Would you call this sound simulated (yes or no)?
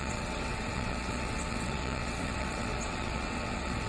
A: yes